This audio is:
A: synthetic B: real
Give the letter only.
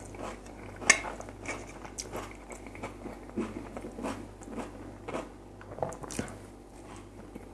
B